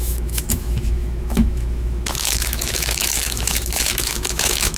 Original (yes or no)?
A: no